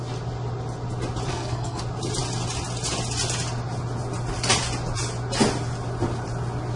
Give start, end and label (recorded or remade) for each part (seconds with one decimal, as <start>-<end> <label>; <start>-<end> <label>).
0.0-1.3 recorded; 1.3-1.8 remade; 1.8-6.8 recorded